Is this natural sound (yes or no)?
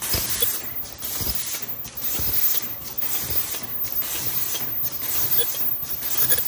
yes